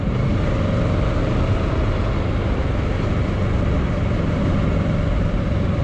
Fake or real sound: real